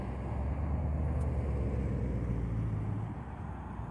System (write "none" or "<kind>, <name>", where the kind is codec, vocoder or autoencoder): none